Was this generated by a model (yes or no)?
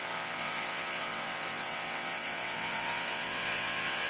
yes